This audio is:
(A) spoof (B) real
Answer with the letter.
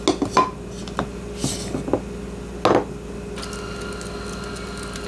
B